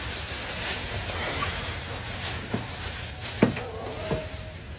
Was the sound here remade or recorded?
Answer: recorded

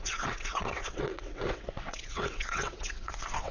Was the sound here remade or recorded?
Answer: remade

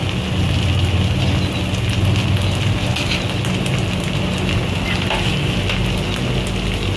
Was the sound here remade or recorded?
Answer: recorded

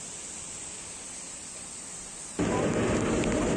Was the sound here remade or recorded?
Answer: recorded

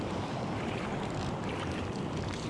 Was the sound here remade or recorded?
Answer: recorded